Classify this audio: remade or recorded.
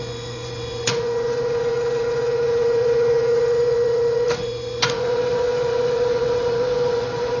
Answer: remade